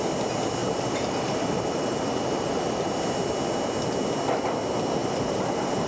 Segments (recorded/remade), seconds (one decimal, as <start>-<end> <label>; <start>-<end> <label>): 0.0-0.6 recorded; 0.6-2.9 remade; 2.9-5.0 recorded; 5.0-5.9 remade